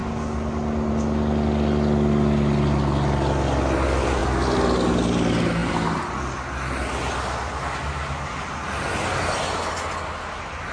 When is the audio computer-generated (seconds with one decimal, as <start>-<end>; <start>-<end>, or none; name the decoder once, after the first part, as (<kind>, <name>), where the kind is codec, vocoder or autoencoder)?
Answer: none

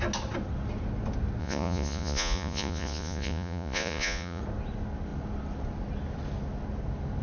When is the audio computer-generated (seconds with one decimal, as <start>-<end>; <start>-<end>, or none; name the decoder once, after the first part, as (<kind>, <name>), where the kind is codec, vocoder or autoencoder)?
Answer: 1.4-4.4 (vocoder, Vocos)

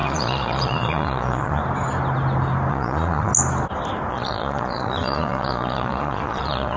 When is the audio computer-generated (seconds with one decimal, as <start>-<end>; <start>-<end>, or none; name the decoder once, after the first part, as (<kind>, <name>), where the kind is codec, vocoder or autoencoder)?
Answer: 0.0-1.6 (vocoder, Vocos); 2.7-3.3; 4.1-6.8

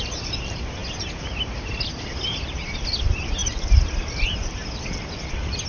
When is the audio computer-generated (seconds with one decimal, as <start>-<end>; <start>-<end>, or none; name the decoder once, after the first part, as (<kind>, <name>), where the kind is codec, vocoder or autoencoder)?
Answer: none

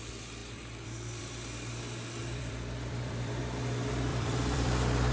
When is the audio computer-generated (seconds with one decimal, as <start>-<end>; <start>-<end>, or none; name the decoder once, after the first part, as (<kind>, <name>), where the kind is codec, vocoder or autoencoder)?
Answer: 0.4-1.8 (vocoder, BigVGAN v2); 2.2-3.4; 4.1-5.1

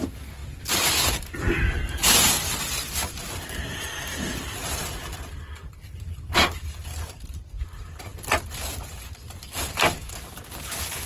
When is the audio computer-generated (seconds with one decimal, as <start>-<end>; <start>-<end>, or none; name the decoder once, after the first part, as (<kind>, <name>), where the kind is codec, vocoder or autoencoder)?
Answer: 0.0-11.1 (vocoder, BigVGAN v2)

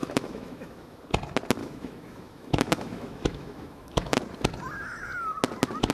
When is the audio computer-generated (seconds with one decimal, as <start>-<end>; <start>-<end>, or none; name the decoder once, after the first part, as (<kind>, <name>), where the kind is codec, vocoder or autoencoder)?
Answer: 0.0-1.0 (autoencoder, DAC-VAE); 1.6-4.2